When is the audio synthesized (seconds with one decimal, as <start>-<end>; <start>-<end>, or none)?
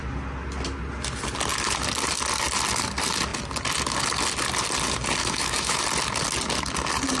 5.2-5.8